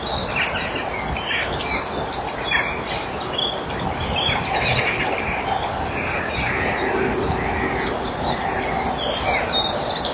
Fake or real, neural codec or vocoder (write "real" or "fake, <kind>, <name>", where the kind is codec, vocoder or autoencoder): real